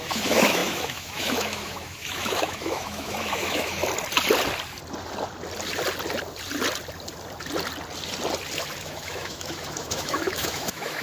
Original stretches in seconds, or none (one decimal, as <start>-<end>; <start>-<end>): 3.8-8.8